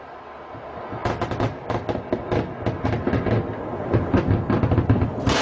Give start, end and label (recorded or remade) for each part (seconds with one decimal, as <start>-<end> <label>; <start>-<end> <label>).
0.0-5.4 recorded